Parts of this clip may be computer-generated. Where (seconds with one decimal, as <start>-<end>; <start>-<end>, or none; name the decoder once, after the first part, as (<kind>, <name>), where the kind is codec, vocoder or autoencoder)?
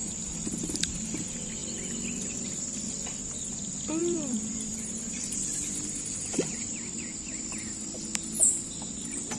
4.0-7.3 (vocoder, BigVGAN v2)